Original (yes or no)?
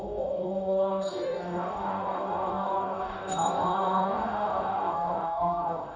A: no